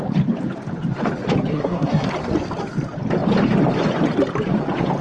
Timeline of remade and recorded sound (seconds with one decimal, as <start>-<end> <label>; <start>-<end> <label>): 0.0-1.5 recorded; 1.5-2.1 remade; 2.1-5.0 recorded